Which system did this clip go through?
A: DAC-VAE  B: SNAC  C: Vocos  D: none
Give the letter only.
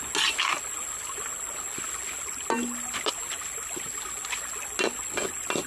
D